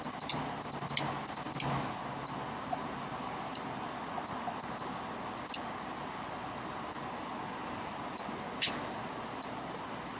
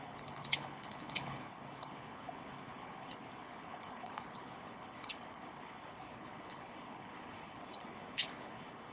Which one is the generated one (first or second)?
second